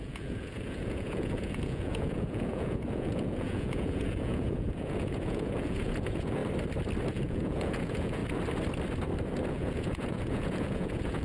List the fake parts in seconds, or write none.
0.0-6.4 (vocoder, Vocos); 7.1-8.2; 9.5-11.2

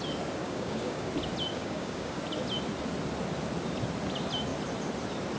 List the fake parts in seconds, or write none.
0.4-1.1 (codec, DAC); 1.5-2.2